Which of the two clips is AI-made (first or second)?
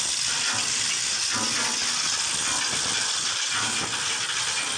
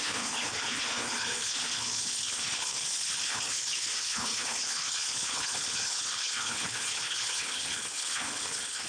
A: second